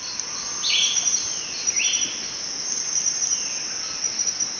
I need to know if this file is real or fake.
real